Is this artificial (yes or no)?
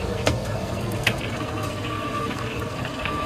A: yes